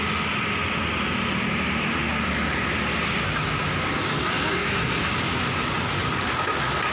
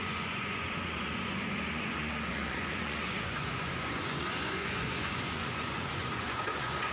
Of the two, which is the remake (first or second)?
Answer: second